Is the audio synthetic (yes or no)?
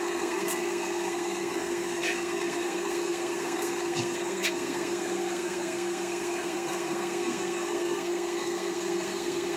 yes